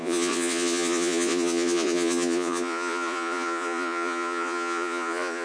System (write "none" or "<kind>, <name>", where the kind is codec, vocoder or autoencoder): vocoder, Vocos